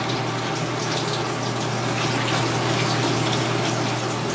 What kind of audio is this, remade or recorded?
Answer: recorded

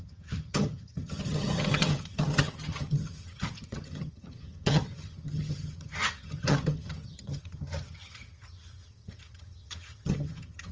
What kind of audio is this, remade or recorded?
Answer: remade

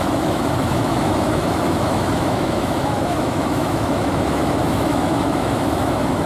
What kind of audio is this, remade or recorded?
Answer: remade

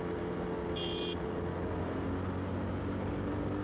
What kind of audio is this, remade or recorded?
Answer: recorded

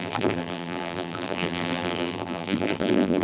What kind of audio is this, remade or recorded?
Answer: remade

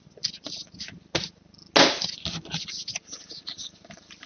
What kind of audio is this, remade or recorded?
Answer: recorded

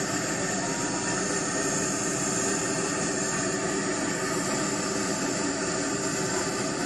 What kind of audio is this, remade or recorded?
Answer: recorded